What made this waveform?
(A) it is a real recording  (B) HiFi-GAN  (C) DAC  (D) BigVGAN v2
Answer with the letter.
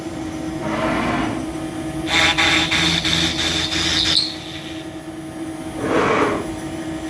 A